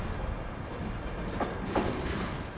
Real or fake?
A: real